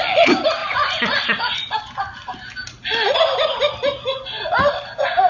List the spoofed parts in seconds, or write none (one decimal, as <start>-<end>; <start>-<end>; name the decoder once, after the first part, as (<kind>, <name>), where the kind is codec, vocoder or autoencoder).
0.6-1.9 (vocoder, Vocos)

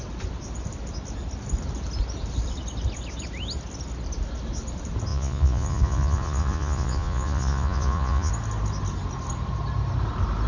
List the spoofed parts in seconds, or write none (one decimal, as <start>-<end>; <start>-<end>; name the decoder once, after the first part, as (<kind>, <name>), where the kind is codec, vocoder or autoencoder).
5.1-8.3 (vocoder, Vocos)

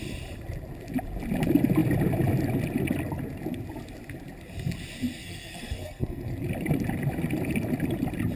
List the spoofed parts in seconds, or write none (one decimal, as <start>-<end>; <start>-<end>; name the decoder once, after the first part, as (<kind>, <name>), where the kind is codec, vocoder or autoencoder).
5.2-6.3 (codec, SNAC)

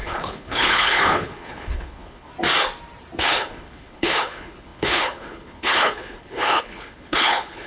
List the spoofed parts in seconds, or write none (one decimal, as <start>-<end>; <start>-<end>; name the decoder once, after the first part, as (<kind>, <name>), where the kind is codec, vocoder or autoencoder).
0.0-2.3 (codec, HILCodec); 3.2-7.7

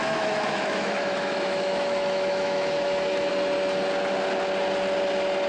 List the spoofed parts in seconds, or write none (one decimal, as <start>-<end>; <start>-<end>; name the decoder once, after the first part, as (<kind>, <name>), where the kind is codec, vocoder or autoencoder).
0.0-3.3 (autoencoder, DAC-VAE)

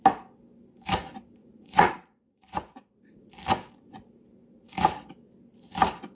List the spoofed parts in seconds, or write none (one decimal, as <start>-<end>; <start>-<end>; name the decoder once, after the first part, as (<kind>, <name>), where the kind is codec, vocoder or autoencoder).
1.4-3.3 (vocoder, Vocos)

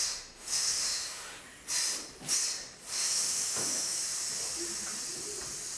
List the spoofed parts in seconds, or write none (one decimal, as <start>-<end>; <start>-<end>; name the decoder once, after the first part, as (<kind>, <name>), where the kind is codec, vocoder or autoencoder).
0.0-1.4 (autoencoder, DAC-VAE); 2.9-4.0